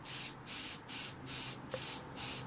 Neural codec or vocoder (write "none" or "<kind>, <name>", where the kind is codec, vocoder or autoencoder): none